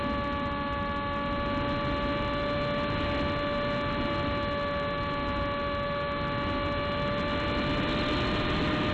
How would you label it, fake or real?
real